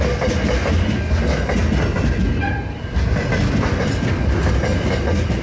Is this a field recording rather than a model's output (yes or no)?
yes